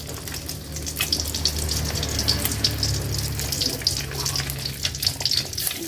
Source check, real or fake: real